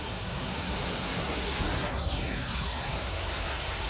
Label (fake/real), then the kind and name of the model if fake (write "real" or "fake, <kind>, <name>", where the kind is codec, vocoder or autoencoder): fake, codec, SNAC